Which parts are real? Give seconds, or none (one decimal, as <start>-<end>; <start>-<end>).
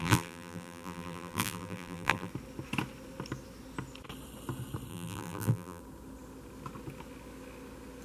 2.3-4.9; 5.8-8.0